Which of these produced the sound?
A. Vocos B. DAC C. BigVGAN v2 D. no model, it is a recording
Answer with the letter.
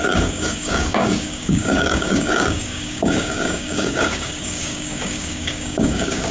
B